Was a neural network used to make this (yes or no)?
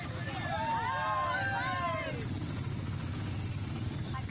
no